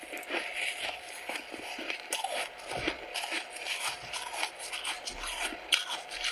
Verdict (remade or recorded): recorded